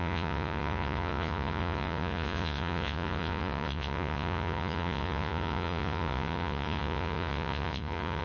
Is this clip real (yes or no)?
no